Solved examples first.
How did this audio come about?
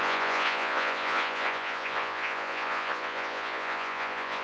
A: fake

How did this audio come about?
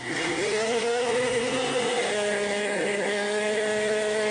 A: fake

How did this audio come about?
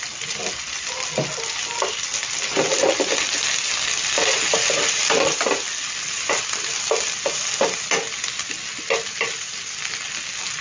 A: real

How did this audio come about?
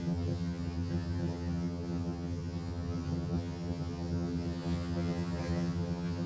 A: fake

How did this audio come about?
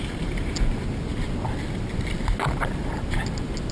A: real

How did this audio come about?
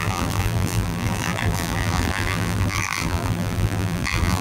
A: fake